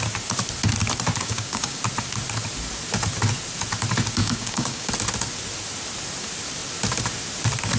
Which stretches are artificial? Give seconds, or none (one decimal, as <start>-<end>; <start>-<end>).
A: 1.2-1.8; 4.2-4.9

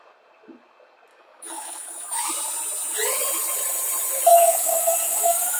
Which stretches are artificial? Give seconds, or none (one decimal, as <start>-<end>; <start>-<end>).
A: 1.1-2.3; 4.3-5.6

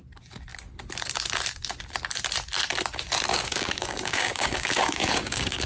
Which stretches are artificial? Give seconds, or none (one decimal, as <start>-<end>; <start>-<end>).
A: 3.3-5.7

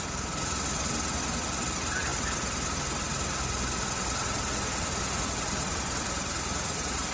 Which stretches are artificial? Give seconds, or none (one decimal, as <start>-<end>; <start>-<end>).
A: none

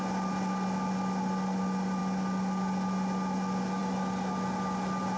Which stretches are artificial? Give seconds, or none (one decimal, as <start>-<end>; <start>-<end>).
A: none